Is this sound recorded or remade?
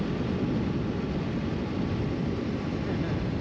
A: recorded